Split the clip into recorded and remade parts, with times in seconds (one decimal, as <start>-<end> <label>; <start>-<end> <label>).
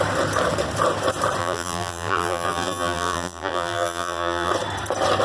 0.0-1.4 recorded; 1.4-4.5 remade; 4.5-5.2 recorded